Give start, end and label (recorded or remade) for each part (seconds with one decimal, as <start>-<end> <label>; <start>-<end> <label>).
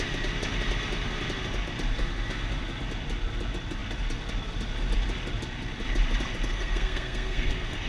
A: 0.0-6.5 recorded; 6.5-7.9 remade